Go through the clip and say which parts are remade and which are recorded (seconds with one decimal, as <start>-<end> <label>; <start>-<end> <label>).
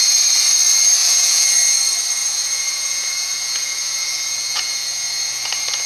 0.0-1.0 recorded; 1.0-1.5 remade; 1.5-2.2 recorded; 2.2-5.9 remade